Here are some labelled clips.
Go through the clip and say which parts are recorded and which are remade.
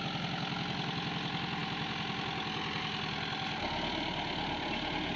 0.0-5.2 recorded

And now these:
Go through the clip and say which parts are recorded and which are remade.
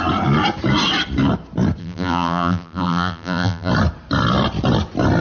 0.0-1.8 recorded; 1.8-3.7 remade; 3.7-5.2 recorded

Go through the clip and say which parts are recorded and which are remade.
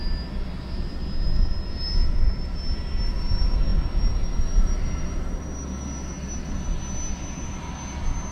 0.0-8.3 recorded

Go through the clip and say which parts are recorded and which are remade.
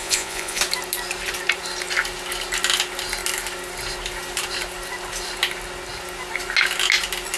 0.0-0.6 remade; 0.6-7.4 recorded